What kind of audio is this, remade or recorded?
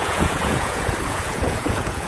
remade